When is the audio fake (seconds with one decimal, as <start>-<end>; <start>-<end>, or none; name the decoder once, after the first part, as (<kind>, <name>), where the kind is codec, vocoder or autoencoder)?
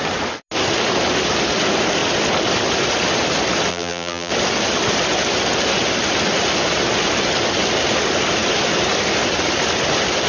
3.7-4.3 (vocoder, BigVGAN v2)